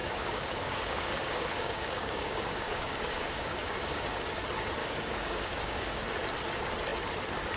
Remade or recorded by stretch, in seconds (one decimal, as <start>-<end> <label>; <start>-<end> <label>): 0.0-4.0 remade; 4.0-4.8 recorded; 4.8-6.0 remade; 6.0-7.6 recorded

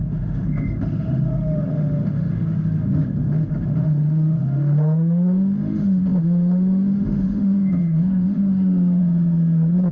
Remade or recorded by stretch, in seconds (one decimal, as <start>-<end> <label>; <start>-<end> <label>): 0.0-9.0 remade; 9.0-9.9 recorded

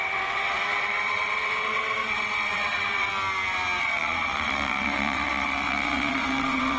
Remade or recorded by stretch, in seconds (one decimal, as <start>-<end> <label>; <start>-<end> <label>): 0.0-3.1 remade; 3.1-3.8 recorded; 3.8-6.8 remade

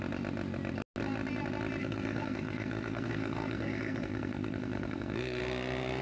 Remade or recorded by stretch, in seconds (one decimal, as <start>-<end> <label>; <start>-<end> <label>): 0.0-1.8 recorded; 1.8-5.4 remade; 5.4-6.0 recorded

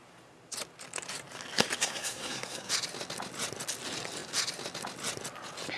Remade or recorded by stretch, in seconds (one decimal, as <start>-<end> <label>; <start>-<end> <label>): 0.0-1.8 recorded; 1.8-2.7 remade; 2.7-5.8 recorded